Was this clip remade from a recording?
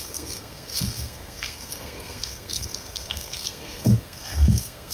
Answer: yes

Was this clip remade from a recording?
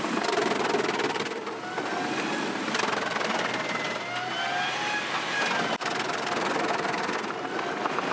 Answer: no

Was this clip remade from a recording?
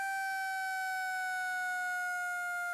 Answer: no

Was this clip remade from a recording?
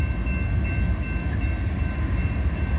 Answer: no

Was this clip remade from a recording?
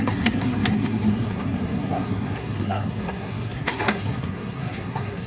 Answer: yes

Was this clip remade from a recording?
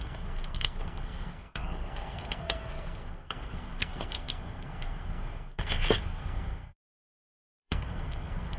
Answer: yes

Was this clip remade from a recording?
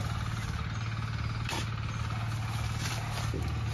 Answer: no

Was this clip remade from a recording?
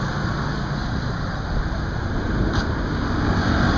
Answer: no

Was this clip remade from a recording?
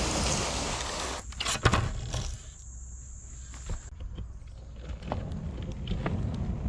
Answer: no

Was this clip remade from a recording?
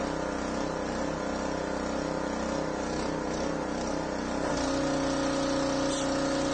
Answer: no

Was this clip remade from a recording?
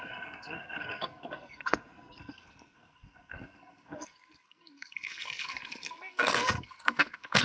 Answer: yes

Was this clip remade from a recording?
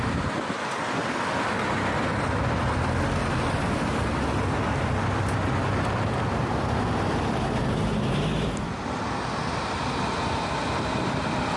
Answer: no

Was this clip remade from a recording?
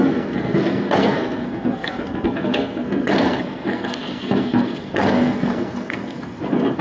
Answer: yes